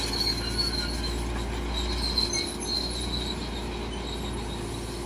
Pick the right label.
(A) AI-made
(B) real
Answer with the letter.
B